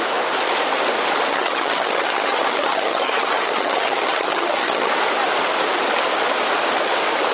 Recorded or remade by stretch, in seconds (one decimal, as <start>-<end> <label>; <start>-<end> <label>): 0.0-1.3 recorded; 1.3-4.9 remade; 4.9-7.3 recorded